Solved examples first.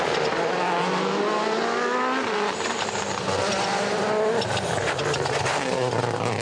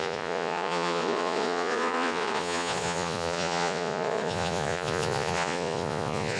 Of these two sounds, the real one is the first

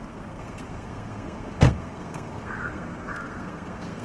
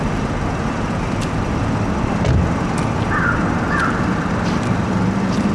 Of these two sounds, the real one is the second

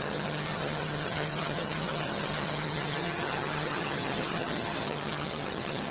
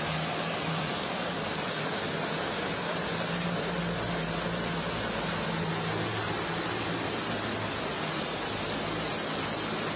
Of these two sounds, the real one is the second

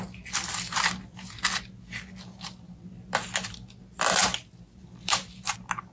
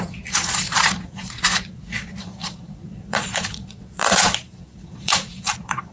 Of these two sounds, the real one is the first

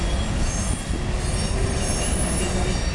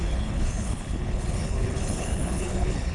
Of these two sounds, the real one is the first